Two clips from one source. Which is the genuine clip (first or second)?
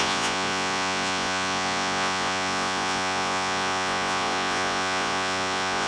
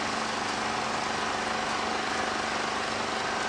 second